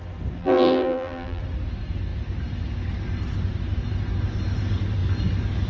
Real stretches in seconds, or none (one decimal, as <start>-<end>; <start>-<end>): 0.0-0.4; 1.4-5.7